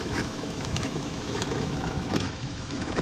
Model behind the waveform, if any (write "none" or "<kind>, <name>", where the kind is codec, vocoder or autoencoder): autoencoder, DAC-VAE